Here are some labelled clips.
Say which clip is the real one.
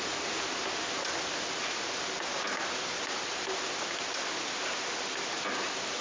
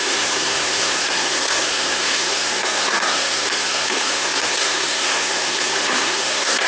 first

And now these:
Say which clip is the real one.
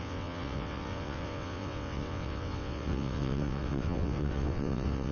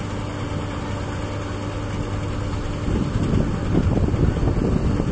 second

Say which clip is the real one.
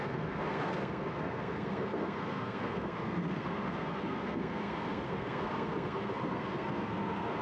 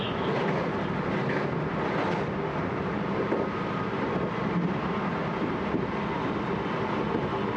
second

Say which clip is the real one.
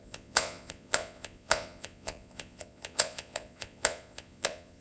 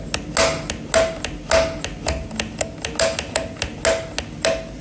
second